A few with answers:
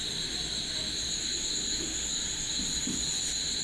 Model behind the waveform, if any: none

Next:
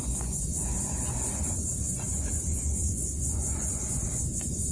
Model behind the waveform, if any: vocoder, Vocos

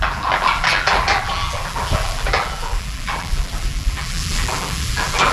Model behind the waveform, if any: vocoder, BigVGAN v2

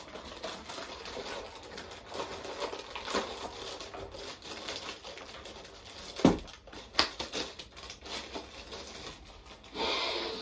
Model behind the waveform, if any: none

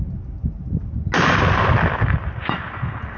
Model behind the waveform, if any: none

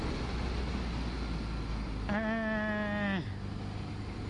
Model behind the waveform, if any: none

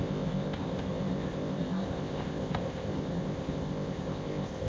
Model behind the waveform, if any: codec, ZipCodec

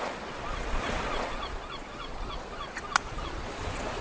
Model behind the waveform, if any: vocoder, Vocos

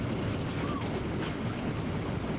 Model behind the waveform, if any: none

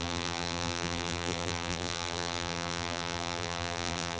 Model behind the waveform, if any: vocoder, BigVGAN v2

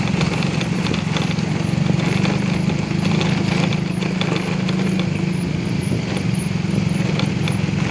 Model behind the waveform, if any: none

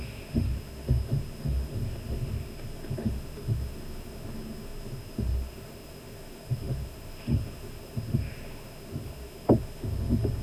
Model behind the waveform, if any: autoencoder, DAC-VAE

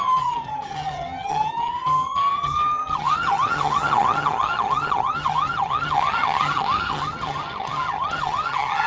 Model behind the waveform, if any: vocoder, HiFi-GAN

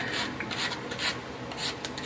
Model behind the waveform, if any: none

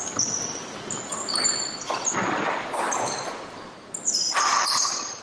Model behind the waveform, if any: none